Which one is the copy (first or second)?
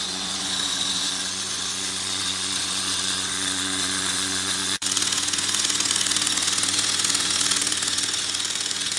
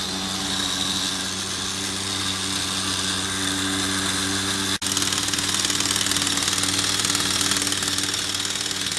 first